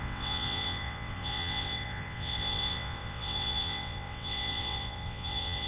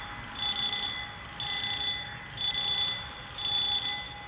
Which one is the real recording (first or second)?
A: second